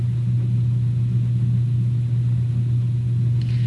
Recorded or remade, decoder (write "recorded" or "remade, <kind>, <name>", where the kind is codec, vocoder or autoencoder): recorded